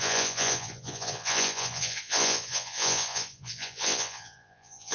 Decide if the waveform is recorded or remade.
remade